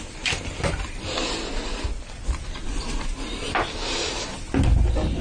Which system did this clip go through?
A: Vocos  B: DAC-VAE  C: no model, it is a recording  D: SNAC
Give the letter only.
C